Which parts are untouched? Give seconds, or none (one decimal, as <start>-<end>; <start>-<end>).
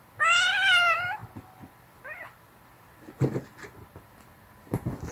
0.0-5.1